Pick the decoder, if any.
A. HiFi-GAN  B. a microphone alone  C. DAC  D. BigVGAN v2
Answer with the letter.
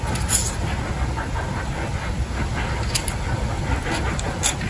B